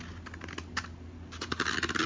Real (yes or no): yes